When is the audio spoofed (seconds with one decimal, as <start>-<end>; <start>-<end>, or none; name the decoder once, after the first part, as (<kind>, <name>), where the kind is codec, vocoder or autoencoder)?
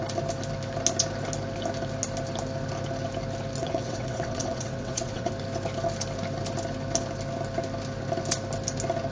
3.6-5.3 (vocoder, WaveNeXt)